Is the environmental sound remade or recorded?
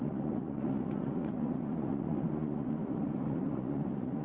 remade